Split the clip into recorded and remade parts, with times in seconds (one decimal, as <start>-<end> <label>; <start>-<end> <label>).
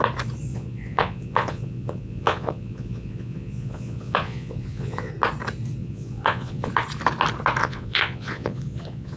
0.0-0.5 recorded; 0.5-5.1 remade; 5.1-5.8 recorded; 5.8-6.7 remade; 6.7-7.6 recorded; 7.6-9.2 remade